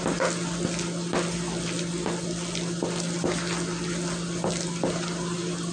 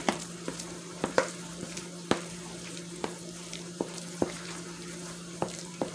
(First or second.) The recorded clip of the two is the first